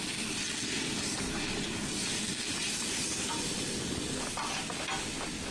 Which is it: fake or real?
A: real